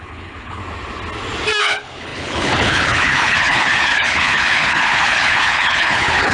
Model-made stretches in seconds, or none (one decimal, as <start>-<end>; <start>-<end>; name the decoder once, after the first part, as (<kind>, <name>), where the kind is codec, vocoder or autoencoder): 0.0-0.6 (codec, HILCodec); 1.6-6.3